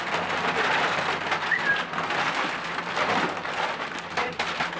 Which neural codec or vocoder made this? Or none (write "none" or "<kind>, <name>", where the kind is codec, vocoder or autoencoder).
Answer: none